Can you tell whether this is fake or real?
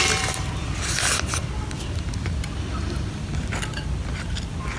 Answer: fake